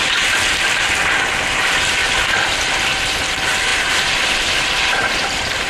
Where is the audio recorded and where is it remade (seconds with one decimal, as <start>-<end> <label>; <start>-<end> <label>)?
0.0-3.7 recorded; 3.7-5.7 remade

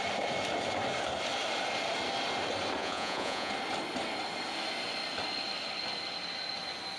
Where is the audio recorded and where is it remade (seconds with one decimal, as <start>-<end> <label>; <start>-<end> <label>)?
0.0-2.8 recorded; 2.8-3.5 remade; 3.5-7.0 recorded